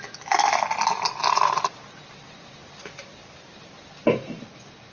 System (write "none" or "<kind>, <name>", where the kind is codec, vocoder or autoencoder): none